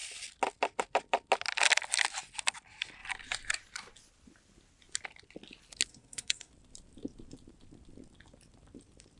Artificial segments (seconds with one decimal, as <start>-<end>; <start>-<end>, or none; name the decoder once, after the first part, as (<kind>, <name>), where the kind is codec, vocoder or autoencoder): 5.9-6.5 (codec, SNAC)